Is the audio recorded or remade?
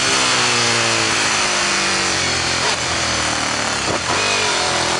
recorded